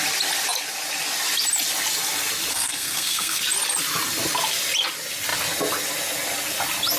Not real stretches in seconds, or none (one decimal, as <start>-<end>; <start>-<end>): 2.5-3.4